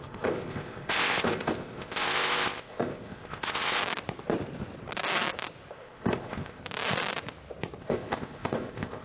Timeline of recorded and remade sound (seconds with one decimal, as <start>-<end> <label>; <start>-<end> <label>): 0.0-3.8 remade; 3.8-5.7 recorded; 5.7-6.6 remade; 6.6-7.8 recorded; 7.8-9.0 remade